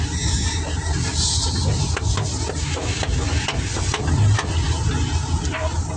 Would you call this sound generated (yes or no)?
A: no